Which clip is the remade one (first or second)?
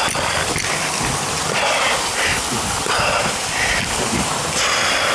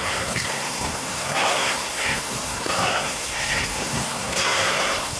second